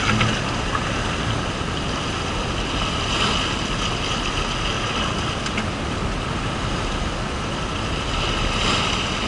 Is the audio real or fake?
real